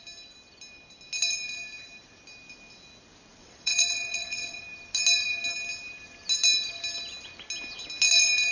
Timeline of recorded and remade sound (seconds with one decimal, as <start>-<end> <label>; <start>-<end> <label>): 0.0-3.4 recorded; 3.4-4.6 remade; 4.6-8.5 recorded